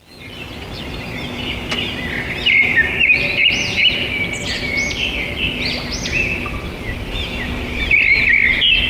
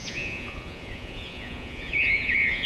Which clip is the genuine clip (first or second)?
first